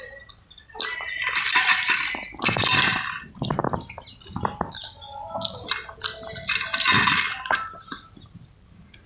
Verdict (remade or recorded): recorded